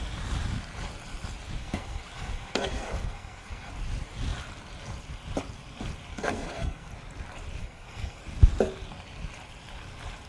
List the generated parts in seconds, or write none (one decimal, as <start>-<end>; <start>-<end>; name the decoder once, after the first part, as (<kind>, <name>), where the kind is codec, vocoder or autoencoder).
1.6-3.7 (codec, SNAC); 6.1-6.9; 7.6-8.2